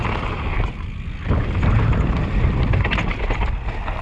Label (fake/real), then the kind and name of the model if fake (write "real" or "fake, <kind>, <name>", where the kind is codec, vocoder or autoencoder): real